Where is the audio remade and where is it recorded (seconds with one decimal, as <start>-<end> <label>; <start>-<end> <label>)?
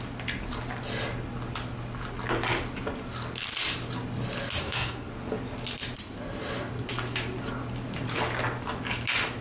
0.0-4.6 recorded; 4.6-5.1 remade; 5.1-9.4 recorded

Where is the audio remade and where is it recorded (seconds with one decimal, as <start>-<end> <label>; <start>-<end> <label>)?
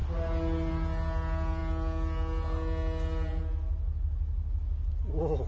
0.0-5.5 recorded